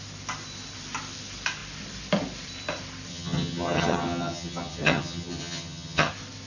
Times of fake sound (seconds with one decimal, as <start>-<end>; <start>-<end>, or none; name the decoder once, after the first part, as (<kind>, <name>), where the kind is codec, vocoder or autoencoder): 3.1-6.1 (vocoder, HiFi-GAN)